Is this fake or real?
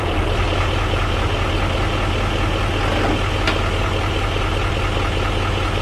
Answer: real